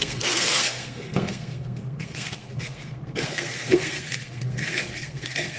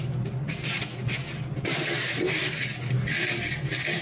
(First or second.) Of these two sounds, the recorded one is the second